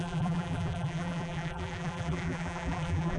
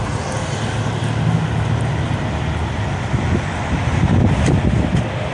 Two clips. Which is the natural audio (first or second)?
second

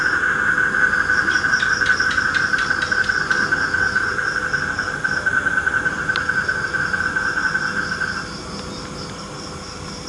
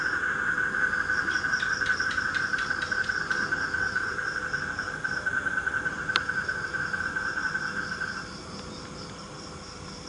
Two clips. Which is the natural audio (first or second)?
first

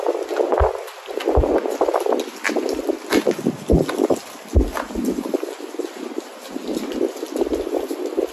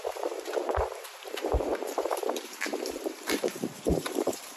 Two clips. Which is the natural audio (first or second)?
first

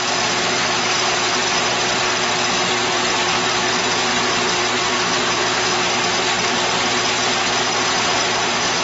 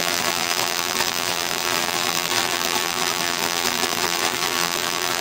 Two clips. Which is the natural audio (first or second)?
first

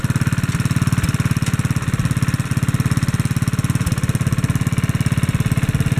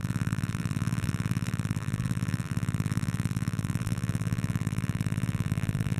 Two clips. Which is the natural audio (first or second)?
first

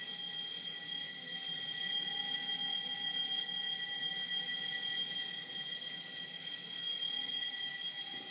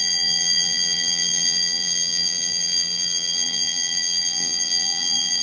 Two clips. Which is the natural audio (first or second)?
first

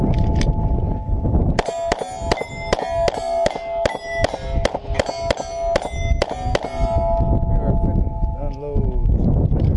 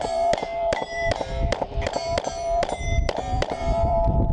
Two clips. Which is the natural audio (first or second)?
first